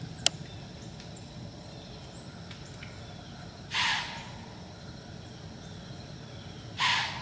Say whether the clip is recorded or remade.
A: recorded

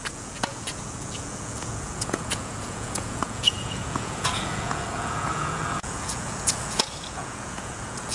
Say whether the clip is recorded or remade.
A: remade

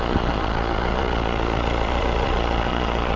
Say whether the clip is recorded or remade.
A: remade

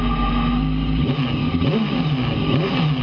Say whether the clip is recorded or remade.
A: recorded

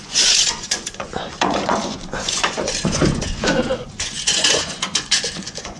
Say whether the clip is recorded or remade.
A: remade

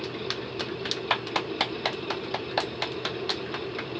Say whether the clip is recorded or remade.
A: recorded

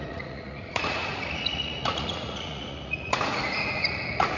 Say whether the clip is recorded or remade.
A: remade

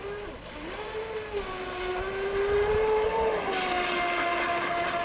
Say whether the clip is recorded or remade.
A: recorded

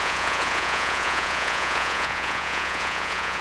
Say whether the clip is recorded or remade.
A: remade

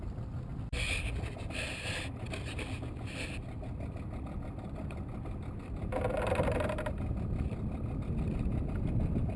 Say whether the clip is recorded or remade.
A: recorded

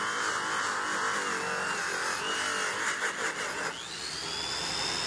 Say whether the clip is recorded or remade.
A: recorded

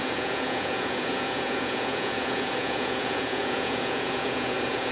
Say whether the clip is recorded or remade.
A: remade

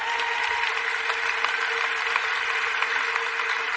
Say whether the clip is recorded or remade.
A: recorded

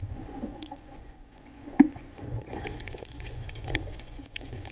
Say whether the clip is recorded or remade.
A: remade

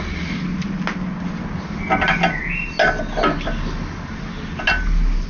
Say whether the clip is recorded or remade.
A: recorded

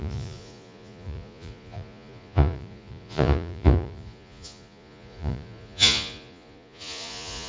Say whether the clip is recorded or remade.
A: remade